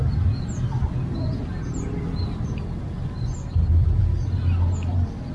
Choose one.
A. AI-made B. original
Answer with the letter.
B